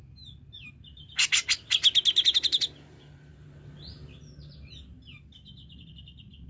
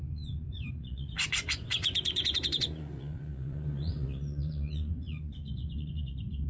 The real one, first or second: first